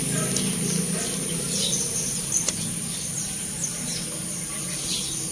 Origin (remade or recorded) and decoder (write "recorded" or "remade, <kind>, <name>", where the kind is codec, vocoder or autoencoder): recorded